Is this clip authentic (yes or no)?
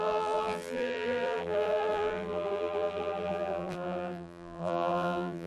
no